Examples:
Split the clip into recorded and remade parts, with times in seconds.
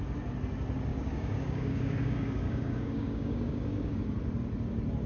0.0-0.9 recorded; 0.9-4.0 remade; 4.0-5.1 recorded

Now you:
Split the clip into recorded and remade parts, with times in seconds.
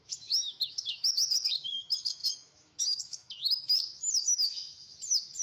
0.0-5.4 remade